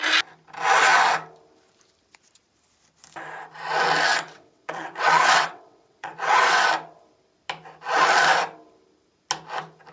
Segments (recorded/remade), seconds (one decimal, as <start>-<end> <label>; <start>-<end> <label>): 0.0-4.1 recorded; 4.1-6.6 remade; 6.6-9.9 recorded